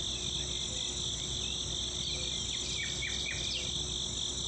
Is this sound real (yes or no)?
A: yes